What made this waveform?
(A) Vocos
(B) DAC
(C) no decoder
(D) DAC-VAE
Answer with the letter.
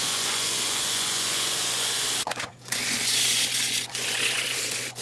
A